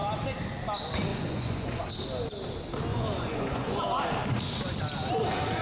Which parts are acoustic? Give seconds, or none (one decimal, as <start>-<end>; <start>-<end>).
0.0-1.1; 1.9-2.9; 3.8-5.6